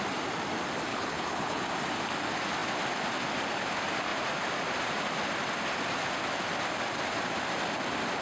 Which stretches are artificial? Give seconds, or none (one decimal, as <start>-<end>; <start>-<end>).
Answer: 0.9-1.6